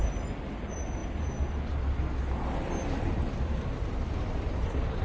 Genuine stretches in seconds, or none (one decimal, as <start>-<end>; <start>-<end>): 0.0-5.0